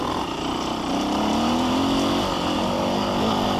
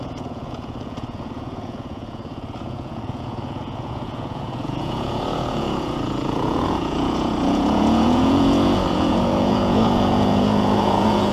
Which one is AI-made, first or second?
second